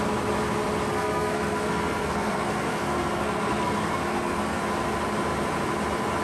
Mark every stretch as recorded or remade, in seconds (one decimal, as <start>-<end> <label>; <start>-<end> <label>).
0.0-0.9 recorded; 0.9-4.6 remade; 4.6-6.2 recorded